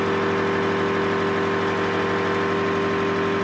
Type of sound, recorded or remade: recorded